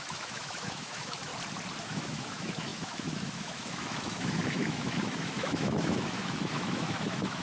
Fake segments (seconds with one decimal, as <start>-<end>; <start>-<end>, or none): 0.0-1.3; 1.8-7.4